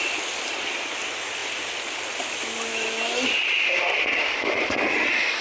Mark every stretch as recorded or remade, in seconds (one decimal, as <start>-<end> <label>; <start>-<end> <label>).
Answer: 0.0-5.4 recorded